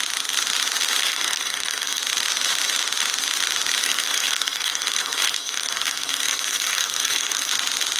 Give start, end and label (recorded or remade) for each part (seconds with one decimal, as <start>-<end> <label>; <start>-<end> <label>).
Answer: 0.0-1.0 recorded; 1.0-2.0 remade; 2.0-3.8 recorded; 3.8-7.5 remade; 7.5-8.0 recorded